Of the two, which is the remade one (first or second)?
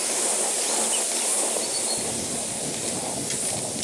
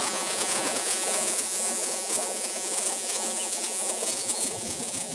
second